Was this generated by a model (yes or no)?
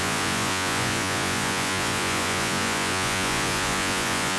yes